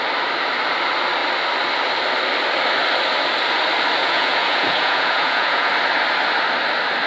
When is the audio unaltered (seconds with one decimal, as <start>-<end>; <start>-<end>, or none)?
0.0-4.0; 5.7-7.1